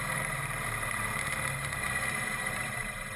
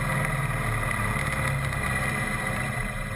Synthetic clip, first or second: first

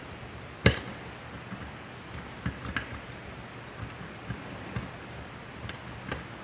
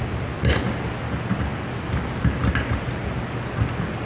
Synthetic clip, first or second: first